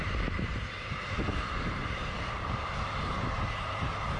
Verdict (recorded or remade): remade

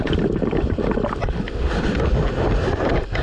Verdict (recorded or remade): remade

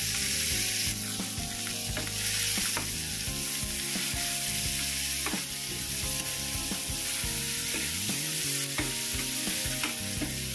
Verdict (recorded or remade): recorded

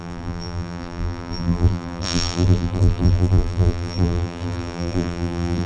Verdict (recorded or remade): remade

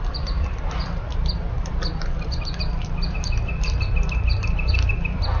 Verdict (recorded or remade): remade